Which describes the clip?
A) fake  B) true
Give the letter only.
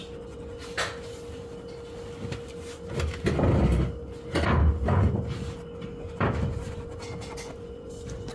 B